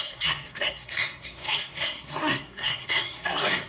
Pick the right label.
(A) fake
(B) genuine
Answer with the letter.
A